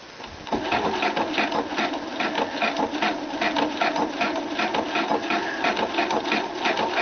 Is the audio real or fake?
real